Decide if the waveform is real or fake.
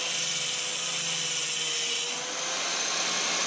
real